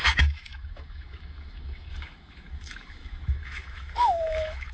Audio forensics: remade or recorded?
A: remade